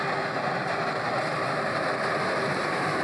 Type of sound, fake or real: real